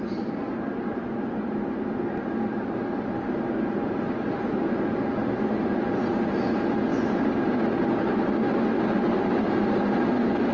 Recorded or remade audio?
recorded